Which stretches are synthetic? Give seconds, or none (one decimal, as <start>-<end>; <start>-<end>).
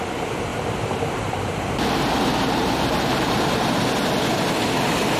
0.5-3.6